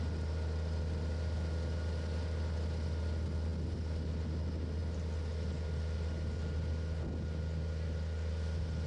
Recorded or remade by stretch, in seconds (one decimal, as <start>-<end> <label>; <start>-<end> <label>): 0.0-8.9 recorded